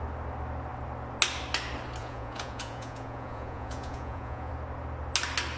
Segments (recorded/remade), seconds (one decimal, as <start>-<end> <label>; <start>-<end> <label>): 0.0-2.0 recorded; 2.0-4.5 remade; 4.5-5.6 recorded